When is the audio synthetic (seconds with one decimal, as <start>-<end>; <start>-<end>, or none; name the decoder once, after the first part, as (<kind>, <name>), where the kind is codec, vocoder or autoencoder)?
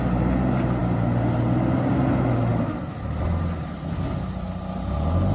none